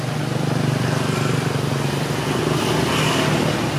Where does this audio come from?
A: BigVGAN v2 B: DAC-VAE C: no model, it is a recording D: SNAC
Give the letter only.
C